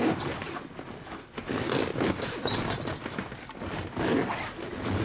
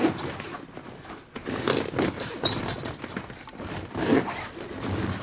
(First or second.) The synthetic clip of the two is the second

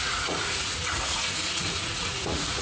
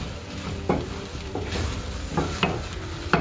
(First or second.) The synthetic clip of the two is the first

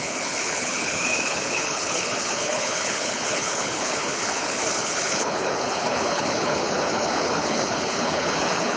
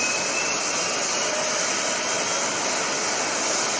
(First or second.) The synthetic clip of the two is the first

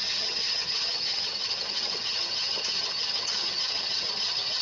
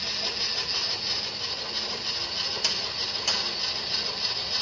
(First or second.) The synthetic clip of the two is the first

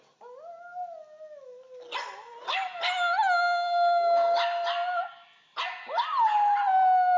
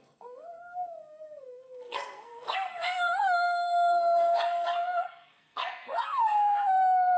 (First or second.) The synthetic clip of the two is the second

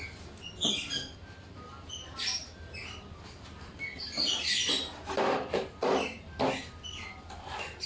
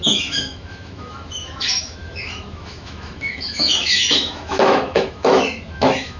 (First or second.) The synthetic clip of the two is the second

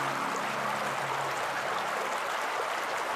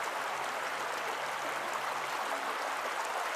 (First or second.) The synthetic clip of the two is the second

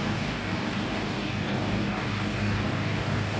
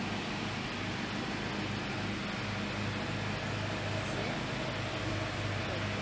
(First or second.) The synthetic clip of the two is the first